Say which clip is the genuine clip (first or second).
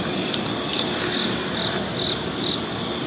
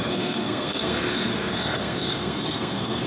first